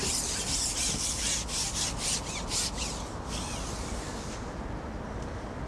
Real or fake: real